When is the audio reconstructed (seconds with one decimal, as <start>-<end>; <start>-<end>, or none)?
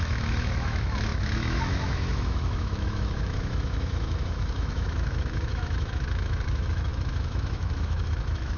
0.0-8.6